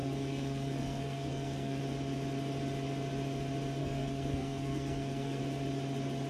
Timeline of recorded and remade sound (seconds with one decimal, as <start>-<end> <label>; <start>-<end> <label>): 0.0-1.8 remade; 1.8-3.8 recorded; 3.8-5.4 remade; 5.4-6.3 recorded